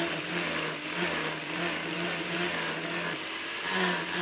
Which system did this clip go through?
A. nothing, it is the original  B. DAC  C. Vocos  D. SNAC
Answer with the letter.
A